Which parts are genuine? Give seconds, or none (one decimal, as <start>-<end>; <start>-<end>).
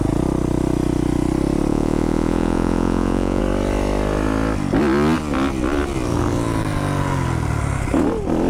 0.0-1.7; 3.4-8.5